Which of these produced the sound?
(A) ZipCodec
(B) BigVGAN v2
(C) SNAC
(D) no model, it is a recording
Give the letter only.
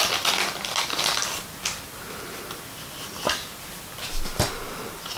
D